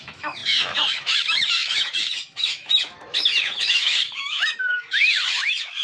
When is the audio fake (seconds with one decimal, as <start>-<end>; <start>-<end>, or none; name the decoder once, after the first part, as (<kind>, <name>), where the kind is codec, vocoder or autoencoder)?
0.0-5.8 (autoencoder, DAC-VAE)